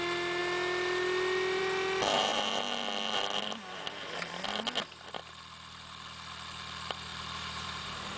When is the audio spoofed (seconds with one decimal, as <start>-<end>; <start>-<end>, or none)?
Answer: 7.1-8.2